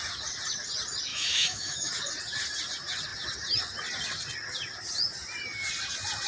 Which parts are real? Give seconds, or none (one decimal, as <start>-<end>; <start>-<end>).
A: 0.0-1.1; 1.9-6.3